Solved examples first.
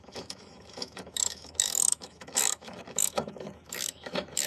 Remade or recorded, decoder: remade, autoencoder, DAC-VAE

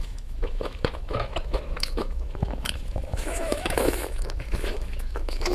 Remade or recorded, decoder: remade, autoencoder, DAC-VAE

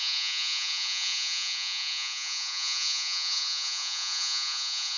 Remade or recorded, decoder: remade, vocoder, Vocos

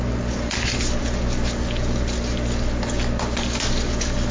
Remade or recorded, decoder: recorded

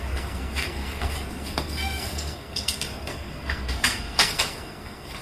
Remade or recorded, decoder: remade, codec, SNAC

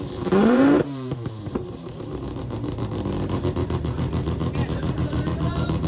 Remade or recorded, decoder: remade, vocoder, BigVGAN v2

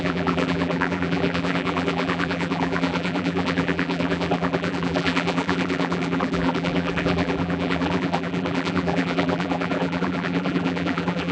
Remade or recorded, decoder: remade, vocoder, BigVGAN v2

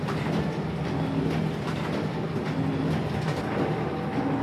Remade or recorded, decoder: recorded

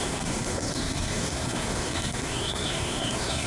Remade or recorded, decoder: remade, codec, SNAC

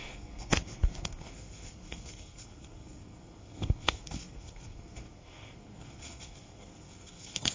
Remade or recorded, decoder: remade, codec, SNAC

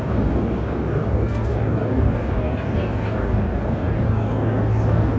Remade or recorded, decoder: remade, codec, DAC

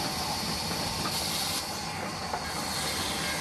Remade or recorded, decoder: recorded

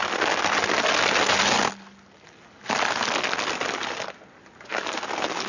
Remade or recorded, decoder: recorded